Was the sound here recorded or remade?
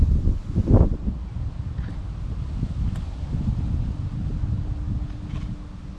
recorded